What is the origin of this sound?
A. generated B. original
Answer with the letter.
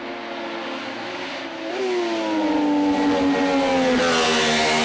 B